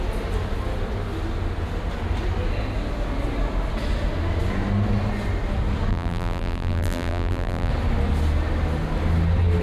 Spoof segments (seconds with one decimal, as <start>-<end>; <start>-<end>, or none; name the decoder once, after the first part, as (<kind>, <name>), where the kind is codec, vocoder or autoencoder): 5.9-7.7 (vocoder, BigVGAN v2)